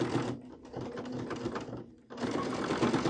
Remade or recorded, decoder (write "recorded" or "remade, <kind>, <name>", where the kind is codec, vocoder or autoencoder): recorded